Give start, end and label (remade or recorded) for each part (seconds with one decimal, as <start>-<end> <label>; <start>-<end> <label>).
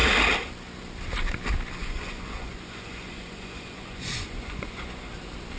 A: 0.0-1.8 recorded; 1.8-5.1 remade; 5.1-5.6 recorded